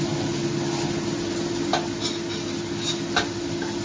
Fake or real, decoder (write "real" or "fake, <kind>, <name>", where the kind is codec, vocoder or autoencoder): real